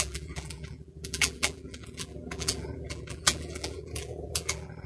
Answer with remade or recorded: remade